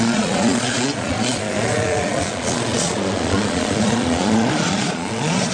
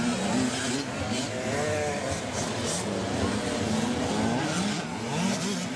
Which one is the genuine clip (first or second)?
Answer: second